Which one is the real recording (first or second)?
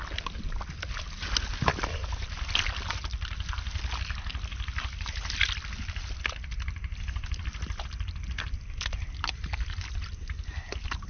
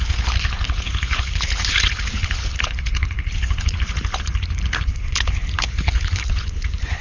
first